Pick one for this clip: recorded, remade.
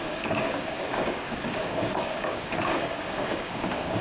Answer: remade